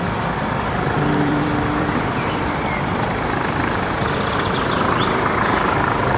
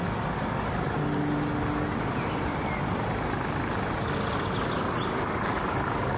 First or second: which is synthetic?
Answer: first